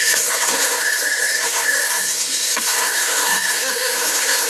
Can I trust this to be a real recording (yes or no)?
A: no